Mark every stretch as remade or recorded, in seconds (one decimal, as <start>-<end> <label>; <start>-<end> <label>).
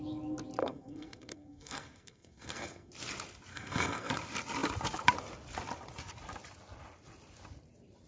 0.0-0.6 recorded; 0.6-2.9 remade; 2.9-3.5 recorded; 3.5-4.1 remade; 4.1-8.1 recorded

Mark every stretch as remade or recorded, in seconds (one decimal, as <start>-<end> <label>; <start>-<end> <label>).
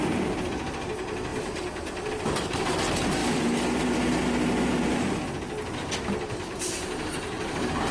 0.0-7.9 recorded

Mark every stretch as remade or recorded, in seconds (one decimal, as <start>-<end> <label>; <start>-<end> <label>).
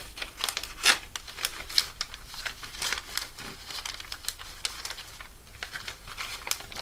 0.0-6.8 recorded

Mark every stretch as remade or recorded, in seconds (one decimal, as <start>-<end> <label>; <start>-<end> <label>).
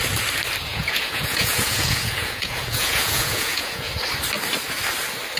0.0-0.7 recorded; 0.7-3.9 remade; 3.9-5.4 recorded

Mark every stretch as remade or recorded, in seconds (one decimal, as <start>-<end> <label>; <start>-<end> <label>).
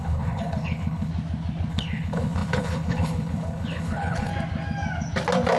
0.0-1.1 remade; 1.1-1.7 recorded; 1.7-4.3 remade; 4.3-5.6 recorded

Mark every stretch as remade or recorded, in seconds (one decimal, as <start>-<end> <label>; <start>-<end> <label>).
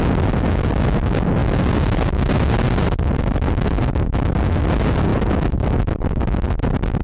0.0-7.0 recorded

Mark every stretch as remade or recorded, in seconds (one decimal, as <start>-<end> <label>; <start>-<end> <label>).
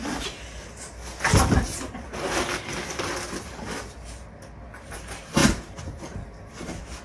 0.0-5.4 recorded; 5.4-6.0 remade; 6.0-7.0 recorded